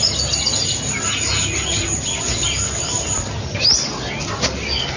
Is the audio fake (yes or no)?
no